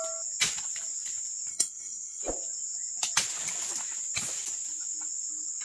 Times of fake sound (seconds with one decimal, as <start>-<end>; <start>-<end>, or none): 1.5-2.2